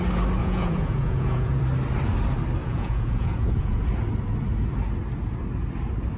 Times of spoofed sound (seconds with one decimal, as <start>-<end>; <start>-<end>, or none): 0.4-1.6; 2.6-3.8